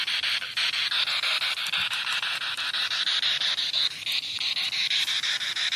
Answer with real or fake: real